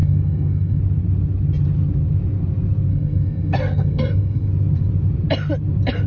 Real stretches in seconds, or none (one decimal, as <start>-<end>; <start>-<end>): 0.8-2.9; 4.5-6.1